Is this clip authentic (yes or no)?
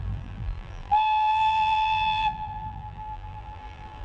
no